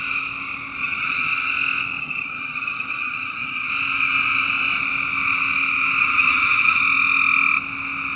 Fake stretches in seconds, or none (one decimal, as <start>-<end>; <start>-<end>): 0.8-1.5; 2.0-3.7; 6.0-6.8